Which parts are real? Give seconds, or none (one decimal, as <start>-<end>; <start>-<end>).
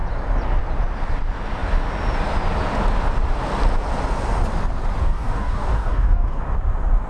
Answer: 0.0-5.0; 6.4-7.1